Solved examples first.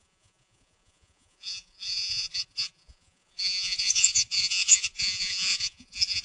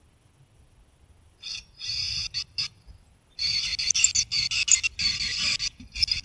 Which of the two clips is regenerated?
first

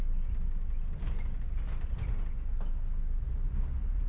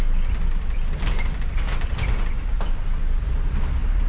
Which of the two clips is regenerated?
second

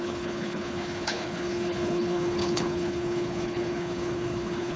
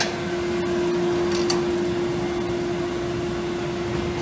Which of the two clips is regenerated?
first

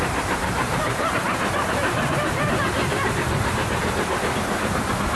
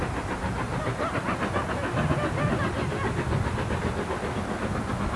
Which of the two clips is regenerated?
first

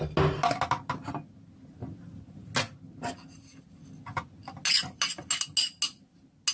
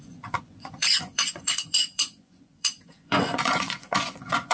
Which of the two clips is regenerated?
second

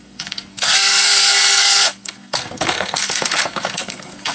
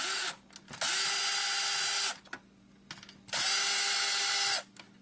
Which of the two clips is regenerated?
first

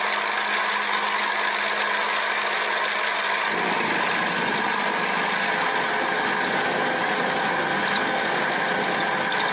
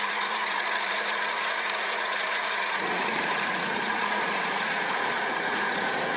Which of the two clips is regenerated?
second